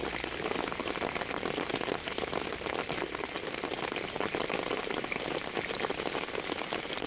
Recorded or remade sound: recorded